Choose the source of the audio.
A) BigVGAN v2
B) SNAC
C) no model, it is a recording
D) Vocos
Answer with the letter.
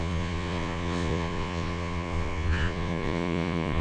D